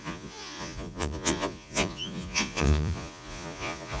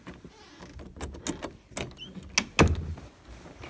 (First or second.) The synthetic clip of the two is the first